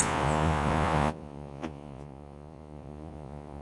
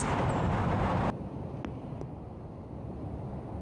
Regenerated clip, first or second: first